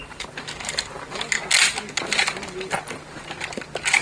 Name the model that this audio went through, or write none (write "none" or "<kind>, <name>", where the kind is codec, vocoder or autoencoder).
none